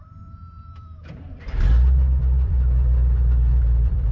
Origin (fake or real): fake